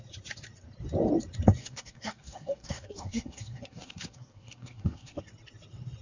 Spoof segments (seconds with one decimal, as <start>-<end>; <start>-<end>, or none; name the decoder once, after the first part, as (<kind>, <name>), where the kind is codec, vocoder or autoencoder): 1.6-5.2 (codec, SNAC)